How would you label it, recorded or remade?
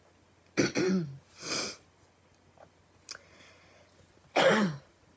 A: recorded